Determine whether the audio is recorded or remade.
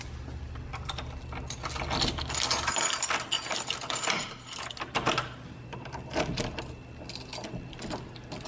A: recorded